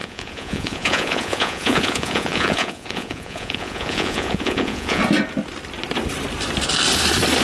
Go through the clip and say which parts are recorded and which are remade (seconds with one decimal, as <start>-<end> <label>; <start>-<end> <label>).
0.0-5.0 remade; 5.0-7.4 recorded